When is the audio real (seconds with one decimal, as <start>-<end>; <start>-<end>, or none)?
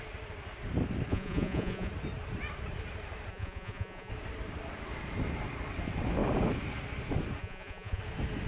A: 0.0-1.1; 1.9-3.3; 4.1-7.4; 8.0-8.5